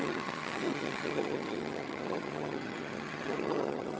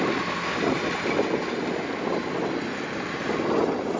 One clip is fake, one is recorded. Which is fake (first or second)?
first